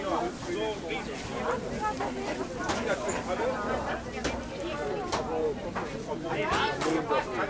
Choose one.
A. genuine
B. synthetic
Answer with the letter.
A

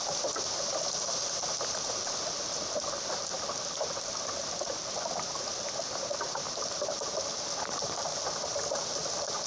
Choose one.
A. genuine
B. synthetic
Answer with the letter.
A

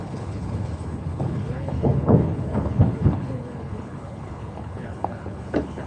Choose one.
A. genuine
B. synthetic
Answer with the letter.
B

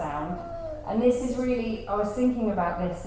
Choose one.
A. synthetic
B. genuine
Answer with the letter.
B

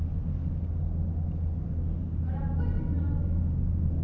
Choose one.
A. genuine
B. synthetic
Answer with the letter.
A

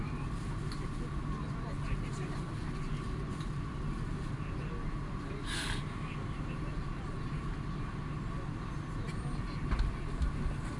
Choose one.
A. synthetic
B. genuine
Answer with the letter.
B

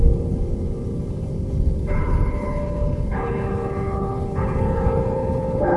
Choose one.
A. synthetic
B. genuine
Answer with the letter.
A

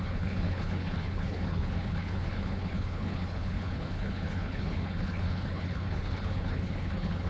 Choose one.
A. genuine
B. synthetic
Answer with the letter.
B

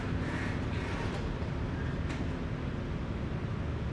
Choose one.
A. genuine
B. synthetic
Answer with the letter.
A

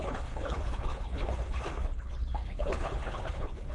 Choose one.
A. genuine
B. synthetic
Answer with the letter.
B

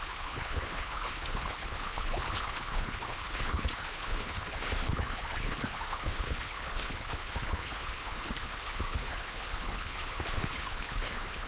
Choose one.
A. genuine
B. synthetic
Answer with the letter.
B